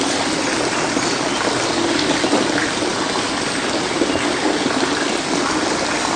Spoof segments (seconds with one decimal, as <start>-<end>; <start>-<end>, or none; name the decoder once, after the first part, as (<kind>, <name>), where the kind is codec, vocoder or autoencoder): none